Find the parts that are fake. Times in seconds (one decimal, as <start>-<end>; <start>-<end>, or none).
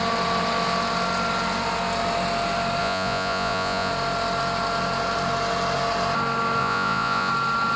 2.8-3.9; 6.6-7.3